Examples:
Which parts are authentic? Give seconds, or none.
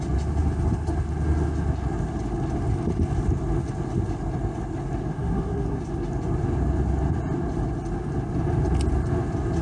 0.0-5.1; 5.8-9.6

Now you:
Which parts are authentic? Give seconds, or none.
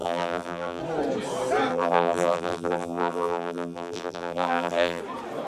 0.8-1.7; 5.0-5.5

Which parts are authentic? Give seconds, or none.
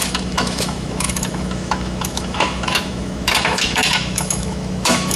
none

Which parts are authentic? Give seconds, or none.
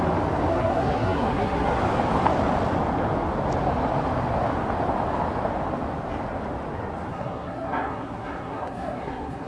0.0-0.5; 1.8-7.1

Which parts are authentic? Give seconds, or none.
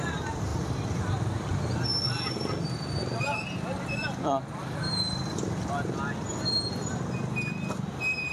0.0-8.3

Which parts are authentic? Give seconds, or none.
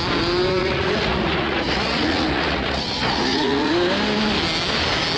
0.0-0.6; 3.7-5.2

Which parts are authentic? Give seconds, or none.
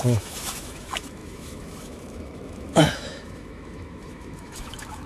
none